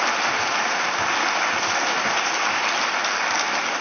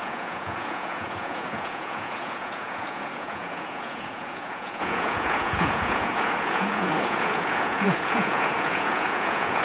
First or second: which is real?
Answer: first